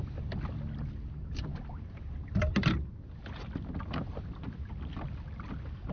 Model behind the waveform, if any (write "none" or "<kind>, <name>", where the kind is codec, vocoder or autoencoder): none